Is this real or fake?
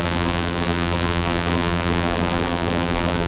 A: fake